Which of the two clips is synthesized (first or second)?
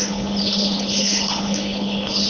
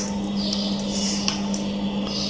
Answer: first